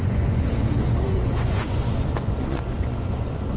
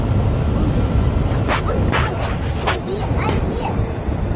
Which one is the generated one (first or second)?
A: first